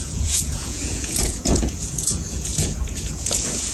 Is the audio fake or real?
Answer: fake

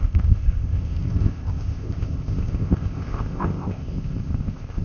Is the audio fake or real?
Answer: fake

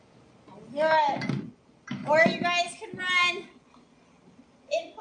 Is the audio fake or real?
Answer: real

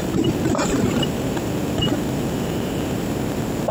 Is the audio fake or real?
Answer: fake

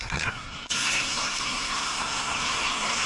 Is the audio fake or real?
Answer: fake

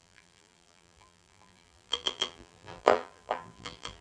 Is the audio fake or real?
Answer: fake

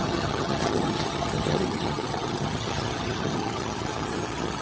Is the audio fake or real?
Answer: fake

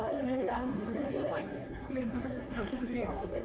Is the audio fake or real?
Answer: fake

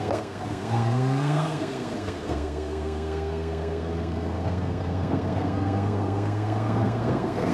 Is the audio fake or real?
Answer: fake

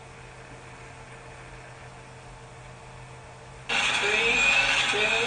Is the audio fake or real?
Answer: real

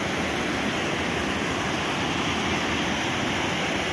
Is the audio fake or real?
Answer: real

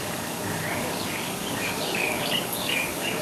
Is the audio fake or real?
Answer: fake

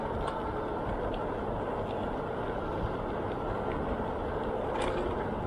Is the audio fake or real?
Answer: real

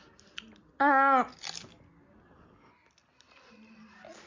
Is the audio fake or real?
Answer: real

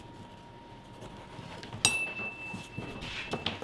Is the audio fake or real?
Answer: real